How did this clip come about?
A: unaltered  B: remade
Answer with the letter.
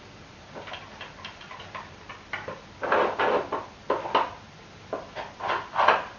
A